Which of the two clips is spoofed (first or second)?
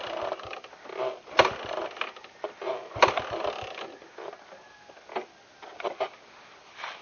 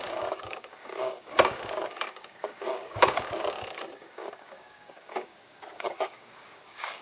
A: second